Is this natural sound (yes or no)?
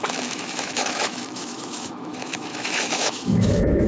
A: no